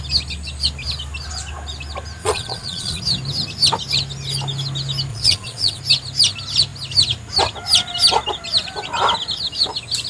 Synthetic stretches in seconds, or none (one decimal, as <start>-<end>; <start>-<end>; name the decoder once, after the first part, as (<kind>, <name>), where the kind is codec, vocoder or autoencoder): 2.2-3.0 (vocoder, Vocos); 5.1-5.8